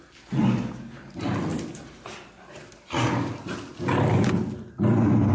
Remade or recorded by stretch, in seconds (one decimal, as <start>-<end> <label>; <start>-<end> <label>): 0.0-5.3 recorded